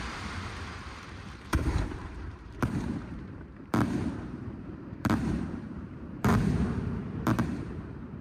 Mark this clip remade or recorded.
remade